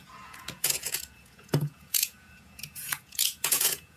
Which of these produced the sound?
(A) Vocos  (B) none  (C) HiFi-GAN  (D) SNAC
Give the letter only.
A